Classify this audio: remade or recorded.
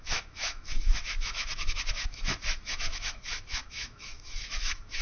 remade